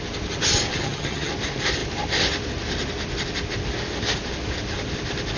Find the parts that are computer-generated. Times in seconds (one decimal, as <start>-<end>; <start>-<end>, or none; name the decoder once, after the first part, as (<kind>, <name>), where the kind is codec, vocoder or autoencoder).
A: 0.7-1.3 (vocoder, HiFi-GAN)